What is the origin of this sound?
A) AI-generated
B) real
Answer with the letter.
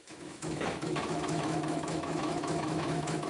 A